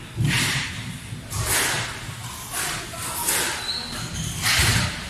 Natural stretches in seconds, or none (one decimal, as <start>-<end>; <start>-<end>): 0.0-5.1